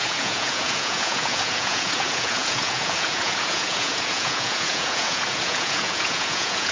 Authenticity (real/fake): fake